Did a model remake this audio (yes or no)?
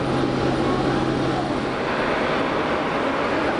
no